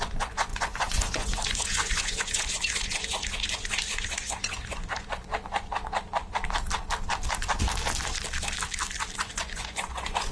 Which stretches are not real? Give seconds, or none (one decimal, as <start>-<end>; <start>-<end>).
0.0-5.3; 9.2-10.3